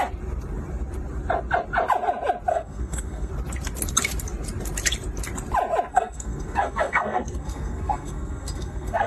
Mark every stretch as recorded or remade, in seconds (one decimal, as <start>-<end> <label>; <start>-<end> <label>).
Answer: 0.0-2.5 recorded; 2.5-3.3 remade; 3.3-5.9 recorded; 5.9-9.1 remade